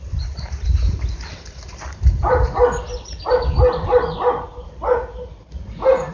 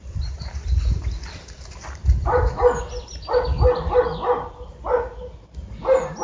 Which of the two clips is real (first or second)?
second